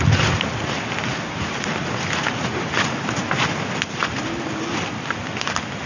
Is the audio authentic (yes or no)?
yes